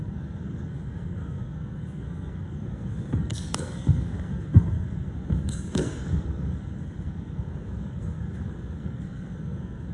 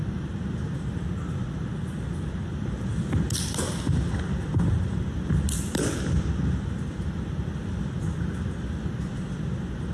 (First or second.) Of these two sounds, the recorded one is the second